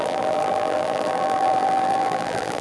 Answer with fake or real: fake